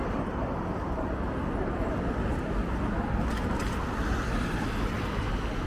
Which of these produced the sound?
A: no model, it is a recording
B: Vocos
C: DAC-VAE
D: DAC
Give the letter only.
A